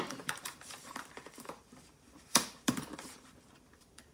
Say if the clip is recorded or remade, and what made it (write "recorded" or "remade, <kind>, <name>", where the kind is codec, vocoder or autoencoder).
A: remade, vocoder, BigVGAN v2